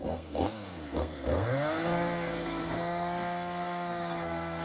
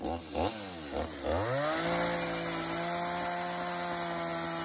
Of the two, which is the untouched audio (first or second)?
second